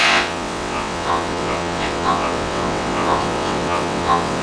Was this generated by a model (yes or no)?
yes